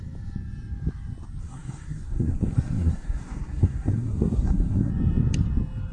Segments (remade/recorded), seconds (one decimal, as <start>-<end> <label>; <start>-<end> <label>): 0.0-1.4 recorded; 1.4-4.9 remade; 4.9-5.9 recorded

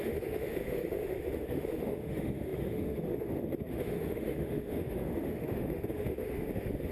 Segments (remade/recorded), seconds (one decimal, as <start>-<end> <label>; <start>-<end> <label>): 0.0-6.9 remade

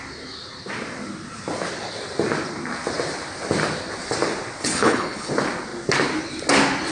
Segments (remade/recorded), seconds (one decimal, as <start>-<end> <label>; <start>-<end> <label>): 0.0-4.6 recorded; 4.6-5.3 remade; 5.3-6.9 recorded

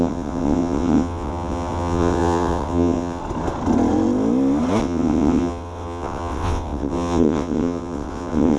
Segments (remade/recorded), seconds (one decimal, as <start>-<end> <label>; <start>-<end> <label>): 0.0-3.2 remade; 3.2-4.8 recorded; 4.8-8.6 remade

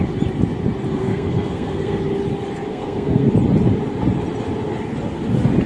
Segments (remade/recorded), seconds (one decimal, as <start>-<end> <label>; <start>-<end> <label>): 0.0-1.0 recorded; 1.0-2.0 remade; 2.0-2.7 recorded; 2.7-3.3 remade; 3.3-5.7 recorded